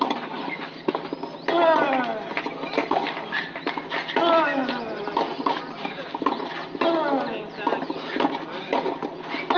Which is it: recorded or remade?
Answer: recorded